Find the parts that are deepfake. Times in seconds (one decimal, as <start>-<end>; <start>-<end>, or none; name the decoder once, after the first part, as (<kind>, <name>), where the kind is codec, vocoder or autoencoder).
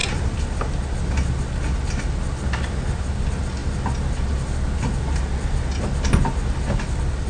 none